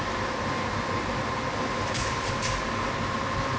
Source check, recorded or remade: recorded